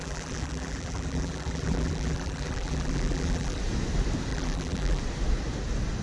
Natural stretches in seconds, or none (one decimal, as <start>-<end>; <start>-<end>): 3.6-4.3; 5.0-6.0